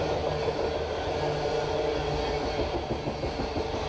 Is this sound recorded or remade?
recorded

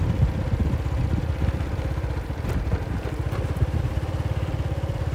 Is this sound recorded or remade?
remade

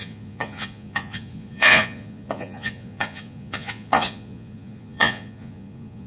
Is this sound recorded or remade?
remade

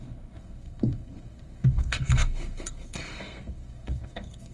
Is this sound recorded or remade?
remade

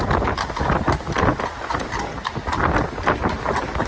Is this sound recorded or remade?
recorded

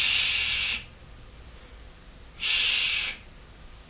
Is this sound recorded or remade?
recorded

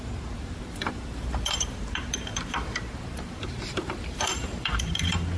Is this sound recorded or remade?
remade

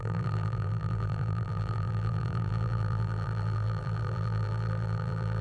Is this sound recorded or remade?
remade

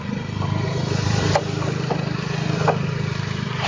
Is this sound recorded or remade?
remade